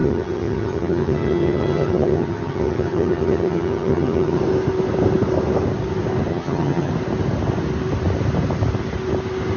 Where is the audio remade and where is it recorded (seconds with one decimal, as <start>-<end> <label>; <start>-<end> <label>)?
0.0-4.4 remade; 4.4-6.3 recorded; 6.3-6.9 remade; 6.9-9.6 recorded